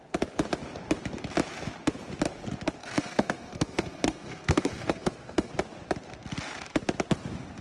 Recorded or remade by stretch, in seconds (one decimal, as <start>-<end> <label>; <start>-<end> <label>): 0.0-2.8 recorded; 2.8-5.5 remade; 5.5-7.6 recorded